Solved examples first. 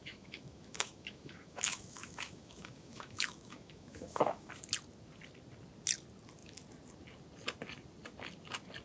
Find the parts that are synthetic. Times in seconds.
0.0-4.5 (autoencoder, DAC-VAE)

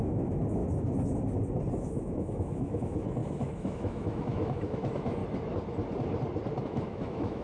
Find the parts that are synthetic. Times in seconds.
0.0-0.6 (autoencoder, DAC-VAE); 1.7-5.2; 6.6-7.4

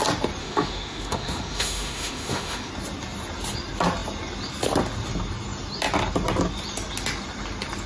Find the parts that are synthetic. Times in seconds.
0.4-2.7 (autoencoder, DAC-VAE)